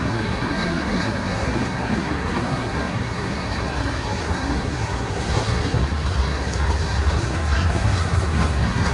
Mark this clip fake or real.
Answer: fake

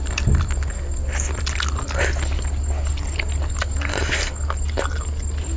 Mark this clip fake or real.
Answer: real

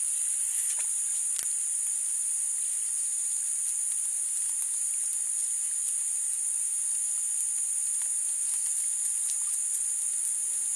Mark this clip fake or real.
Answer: real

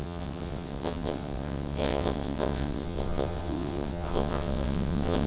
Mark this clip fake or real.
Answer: fake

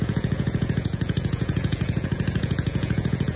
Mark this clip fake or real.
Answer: fake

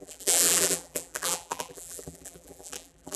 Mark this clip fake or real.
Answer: fake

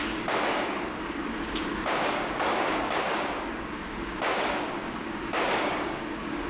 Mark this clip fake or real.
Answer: fake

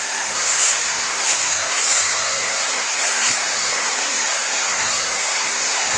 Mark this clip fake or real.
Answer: fake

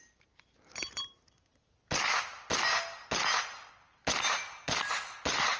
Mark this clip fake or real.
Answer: real